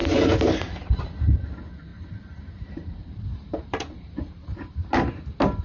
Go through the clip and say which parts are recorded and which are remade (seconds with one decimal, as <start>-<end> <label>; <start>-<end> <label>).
0.0-1.9 recorded; 1.9-5.1 remade; 5.1-5.6 recorded